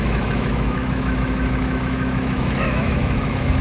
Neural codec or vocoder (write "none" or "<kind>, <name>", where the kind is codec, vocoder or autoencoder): autoencoder, DAC-VAE